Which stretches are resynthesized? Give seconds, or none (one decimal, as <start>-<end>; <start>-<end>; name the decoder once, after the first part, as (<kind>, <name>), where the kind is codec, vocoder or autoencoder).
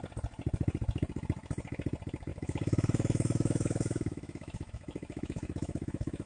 2.3-6.3 (autoencoder, DAC-VAE)